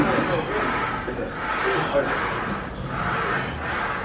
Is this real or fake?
real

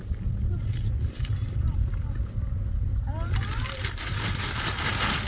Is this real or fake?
real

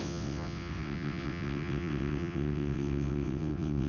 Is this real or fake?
fake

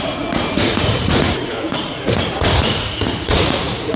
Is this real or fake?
fake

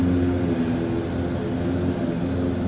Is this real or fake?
real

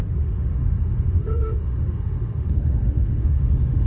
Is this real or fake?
fake